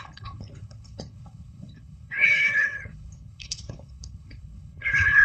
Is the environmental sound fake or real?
fake